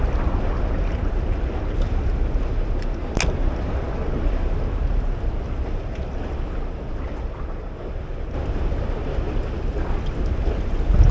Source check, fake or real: real